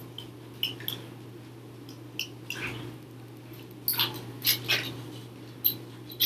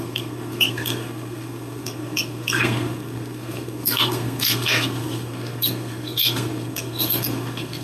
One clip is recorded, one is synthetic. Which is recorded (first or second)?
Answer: first